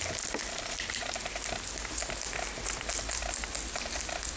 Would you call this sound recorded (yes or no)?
yes